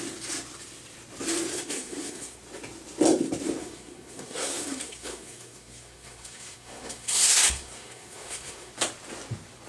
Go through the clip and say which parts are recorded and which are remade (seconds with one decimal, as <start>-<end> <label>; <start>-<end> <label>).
0.0-1.5 recorded; 1.5-2.4 remade; 2.4-3.6 recorded; 3.6-8.7 remade; 8.7-9.7 recorded